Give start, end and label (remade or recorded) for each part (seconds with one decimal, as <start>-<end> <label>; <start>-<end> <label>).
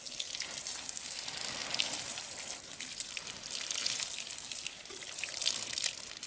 0.0-6.3 recorded